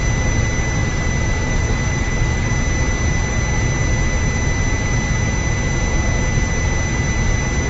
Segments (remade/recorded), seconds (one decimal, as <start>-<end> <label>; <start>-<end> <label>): 0.0-0.8 recorded; 0.8-2.5 remade; 2.5-7.7 recorded